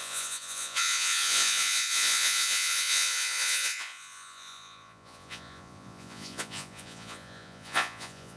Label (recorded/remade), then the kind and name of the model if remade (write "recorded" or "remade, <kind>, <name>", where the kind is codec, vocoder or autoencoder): remade, vocoder, Vocos